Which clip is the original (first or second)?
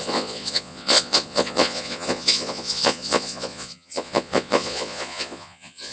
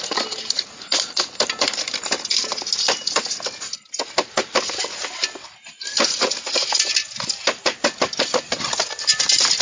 second